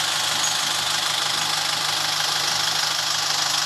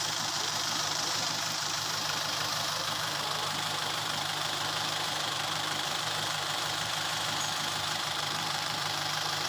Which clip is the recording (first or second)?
first